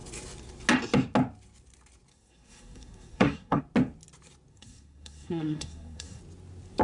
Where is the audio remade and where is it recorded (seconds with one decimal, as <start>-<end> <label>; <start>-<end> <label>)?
0.0-2.1 recorded; 2.1-3.6 remade; 3.6-4.5 recorded; 4.5-6.2 remade; 6.2-6.8 recorded